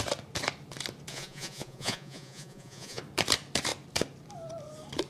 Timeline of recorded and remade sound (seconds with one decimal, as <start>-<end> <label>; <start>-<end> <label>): 0.0-1.1 recorded; 1.1-3.0 remade; 3.0-5.1 recorded